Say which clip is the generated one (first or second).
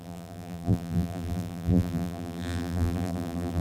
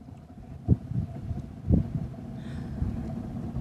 first